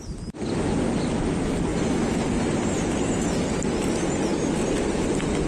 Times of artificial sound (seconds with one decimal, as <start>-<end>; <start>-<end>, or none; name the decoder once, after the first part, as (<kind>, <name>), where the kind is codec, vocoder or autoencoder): none